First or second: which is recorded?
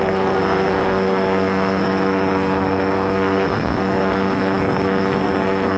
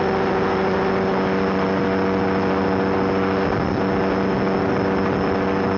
second